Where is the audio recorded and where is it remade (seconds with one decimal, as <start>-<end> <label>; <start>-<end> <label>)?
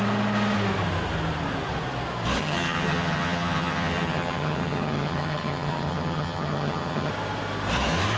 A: 0.0-2.4 recorded; 2.4-7.1 remade; 7.1-8.2 recorded